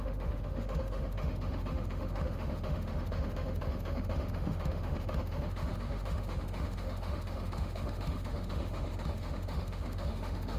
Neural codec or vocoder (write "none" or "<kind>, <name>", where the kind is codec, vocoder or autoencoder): autoencoder, DAC-VAE